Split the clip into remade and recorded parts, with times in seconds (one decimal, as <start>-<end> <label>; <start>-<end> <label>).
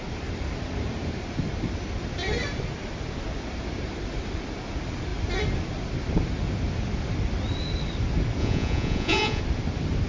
0.0-8.4 recorded; 8.4-9.4 remade; 9.4-10.1 recorded